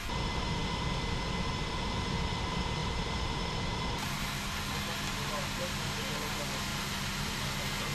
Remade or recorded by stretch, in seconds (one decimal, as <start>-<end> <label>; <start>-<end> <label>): 0.0-2.8 recorded; 2.8-4.2 remade; 4.2-6.7 recorded; 6.7-7.4 remade; 7.4-7.9 recorded